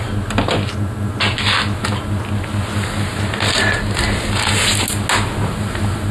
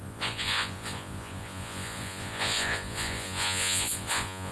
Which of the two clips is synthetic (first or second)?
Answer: second